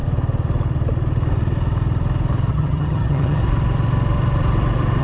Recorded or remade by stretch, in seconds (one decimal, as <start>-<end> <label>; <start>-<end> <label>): 0.0-2.5 recorded; 2.5-3.4 remade; 3.4-5.0 recorded